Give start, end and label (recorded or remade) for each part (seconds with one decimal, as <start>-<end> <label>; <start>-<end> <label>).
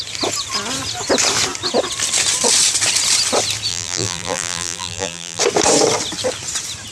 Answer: 0.0-3.7 recorded; 3.7-5.4 remade; 5.4-6.9 recorded